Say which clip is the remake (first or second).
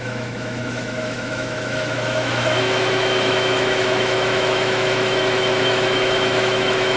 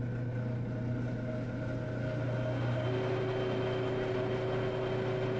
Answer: first